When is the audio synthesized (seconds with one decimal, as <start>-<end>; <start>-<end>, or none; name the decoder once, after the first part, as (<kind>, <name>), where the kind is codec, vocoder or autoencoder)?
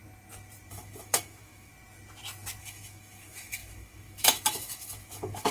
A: 0.7-1.7 (autoencoder, DAC-VAE); 2.6-5.5